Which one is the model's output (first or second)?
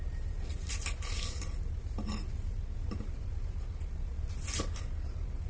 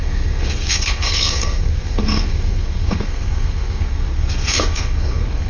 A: second